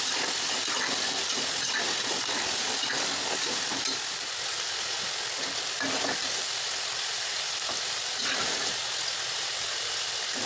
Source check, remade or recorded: recorded